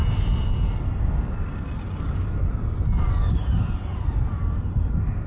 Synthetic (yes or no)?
no